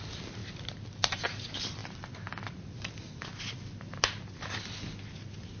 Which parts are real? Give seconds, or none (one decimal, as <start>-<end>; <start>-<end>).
0.0-5.6